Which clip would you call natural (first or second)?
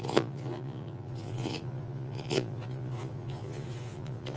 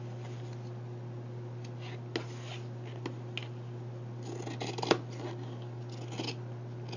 second